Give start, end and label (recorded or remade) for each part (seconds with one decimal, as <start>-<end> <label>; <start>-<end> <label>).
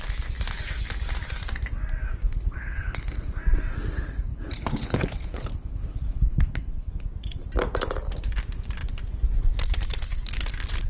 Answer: 0.0-2.2 recorded; 2.2-3.3 remade; 3.3-4.3 recorded; 4.3-6.9 remade; 6.9-10.9 recorded